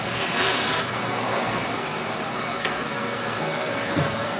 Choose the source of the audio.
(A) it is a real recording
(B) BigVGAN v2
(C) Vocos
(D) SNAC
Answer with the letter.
D